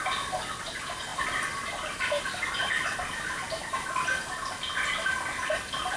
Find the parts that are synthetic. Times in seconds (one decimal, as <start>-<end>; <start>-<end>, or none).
1.1-2.7